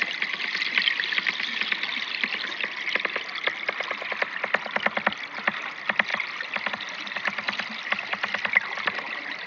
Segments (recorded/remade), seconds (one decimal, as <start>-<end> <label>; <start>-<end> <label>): 0.0-9.5 recorded